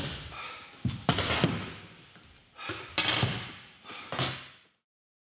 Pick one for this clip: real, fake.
real